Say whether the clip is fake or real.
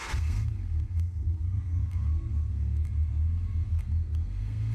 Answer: fake